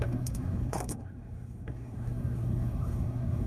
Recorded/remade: remade